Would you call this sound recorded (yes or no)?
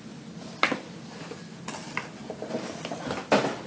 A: yes